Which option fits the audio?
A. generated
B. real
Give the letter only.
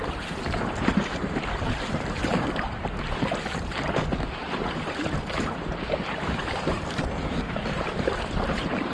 A